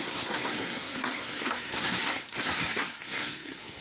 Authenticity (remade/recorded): remade